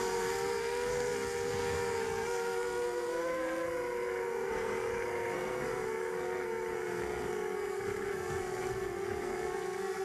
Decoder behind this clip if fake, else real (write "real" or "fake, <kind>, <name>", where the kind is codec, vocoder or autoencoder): fake, codec, SNAC